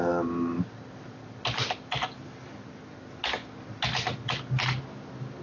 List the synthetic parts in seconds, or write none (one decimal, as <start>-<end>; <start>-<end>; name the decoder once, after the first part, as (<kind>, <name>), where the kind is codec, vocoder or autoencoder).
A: none